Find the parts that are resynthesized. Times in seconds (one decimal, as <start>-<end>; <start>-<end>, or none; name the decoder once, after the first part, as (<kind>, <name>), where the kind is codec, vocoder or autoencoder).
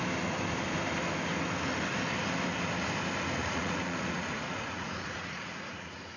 3.4-6.2 (vocoder, Vocos)